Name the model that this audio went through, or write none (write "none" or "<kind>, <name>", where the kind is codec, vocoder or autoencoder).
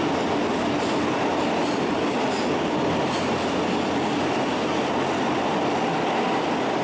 none